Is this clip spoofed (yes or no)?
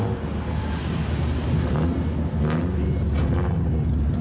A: no